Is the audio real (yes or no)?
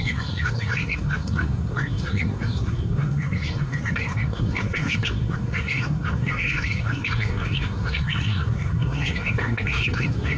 no